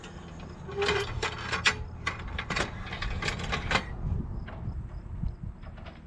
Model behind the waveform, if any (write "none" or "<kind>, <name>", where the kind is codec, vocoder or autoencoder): none